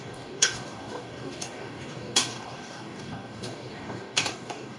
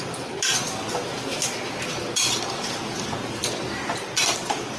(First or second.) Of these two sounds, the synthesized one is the first